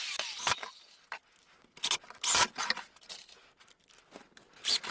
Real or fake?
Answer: real